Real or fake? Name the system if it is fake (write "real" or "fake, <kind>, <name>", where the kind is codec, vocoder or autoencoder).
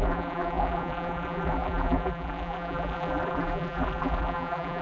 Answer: fake, vocoder, BigVGAN v2